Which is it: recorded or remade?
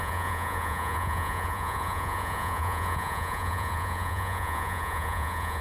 remade